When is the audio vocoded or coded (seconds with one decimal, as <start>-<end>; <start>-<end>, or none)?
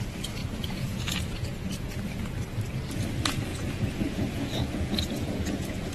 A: 0.4-1.9; 3.5-5.9